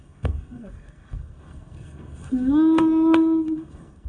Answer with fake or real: fake